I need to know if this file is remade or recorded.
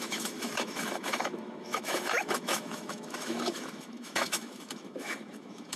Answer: remade